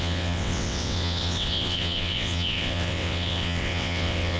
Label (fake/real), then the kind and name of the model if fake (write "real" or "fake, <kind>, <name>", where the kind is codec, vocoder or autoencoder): fake, vocoder, WaveNeXt